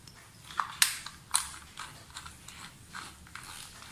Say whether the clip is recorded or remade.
recorded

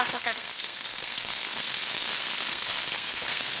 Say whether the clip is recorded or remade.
remade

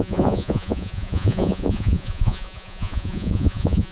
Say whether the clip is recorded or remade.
remade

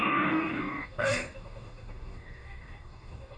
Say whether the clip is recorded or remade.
remade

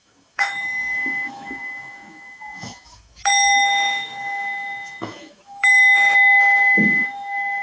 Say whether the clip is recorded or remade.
remade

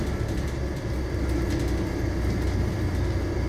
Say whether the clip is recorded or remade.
recorded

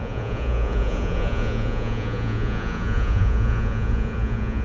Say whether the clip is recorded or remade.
remade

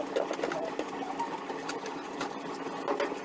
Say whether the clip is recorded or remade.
recorded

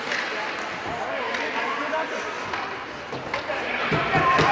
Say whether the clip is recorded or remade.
recorded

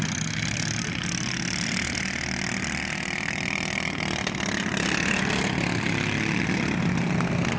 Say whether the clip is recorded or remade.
recorded